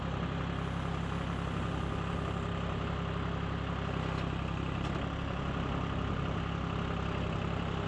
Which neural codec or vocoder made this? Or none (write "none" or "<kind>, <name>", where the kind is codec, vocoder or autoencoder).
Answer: none